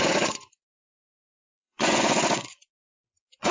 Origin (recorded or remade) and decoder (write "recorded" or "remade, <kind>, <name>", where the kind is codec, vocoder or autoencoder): remade, vocoder, Vocos